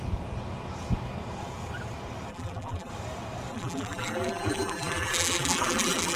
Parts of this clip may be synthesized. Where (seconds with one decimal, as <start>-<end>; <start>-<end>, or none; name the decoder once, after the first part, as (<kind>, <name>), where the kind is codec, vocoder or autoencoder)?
2.3-2.9 (vocoder, BigVGAN v2); 3.5-6.2